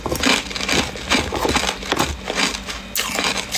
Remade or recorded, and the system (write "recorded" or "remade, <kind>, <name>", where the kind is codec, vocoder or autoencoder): recorded